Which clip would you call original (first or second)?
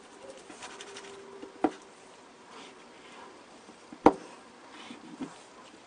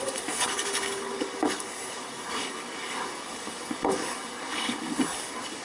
first